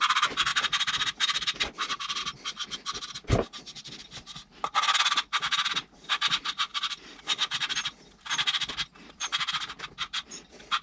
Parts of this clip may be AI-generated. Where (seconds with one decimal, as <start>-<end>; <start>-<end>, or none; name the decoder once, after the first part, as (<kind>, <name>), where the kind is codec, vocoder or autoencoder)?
none